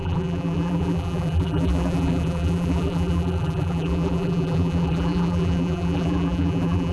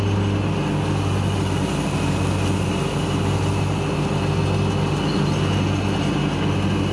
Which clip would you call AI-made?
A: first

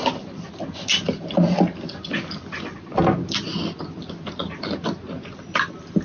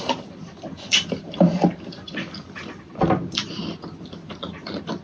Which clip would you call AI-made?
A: second